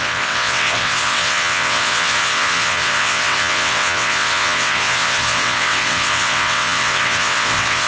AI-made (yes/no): yes